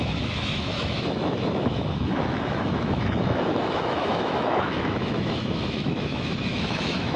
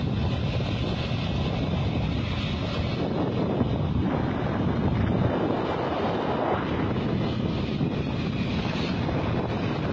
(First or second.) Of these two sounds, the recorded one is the second